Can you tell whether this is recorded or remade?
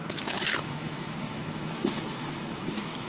remade